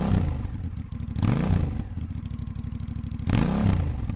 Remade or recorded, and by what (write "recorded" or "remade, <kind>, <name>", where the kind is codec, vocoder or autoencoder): recorded